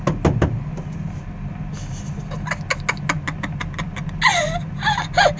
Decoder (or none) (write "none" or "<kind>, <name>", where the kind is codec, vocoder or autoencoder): none